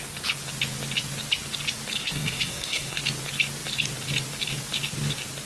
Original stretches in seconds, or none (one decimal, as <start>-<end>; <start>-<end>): 0.0-2.0; 3.0-5.5